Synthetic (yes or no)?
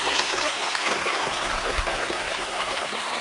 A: yes